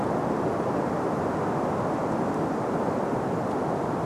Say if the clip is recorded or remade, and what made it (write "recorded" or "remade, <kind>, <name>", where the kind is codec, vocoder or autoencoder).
recorded